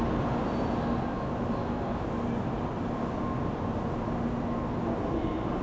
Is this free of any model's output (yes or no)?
yes